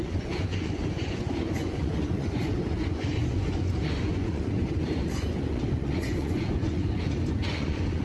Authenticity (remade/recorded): remade